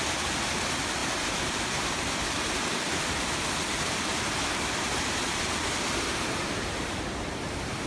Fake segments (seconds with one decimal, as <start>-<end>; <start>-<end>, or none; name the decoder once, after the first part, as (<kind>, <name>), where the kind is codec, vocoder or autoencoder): 4.1-7.0 (vocoder, BigVGAN v2)